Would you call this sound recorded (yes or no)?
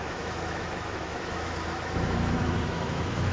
no